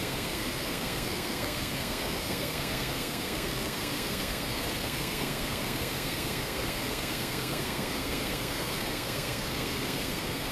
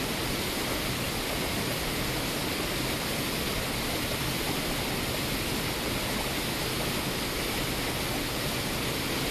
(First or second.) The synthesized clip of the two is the first